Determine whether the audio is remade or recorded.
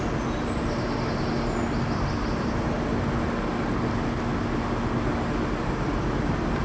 recorded